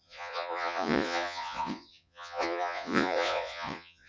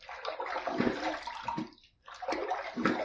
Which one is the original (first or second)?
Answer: second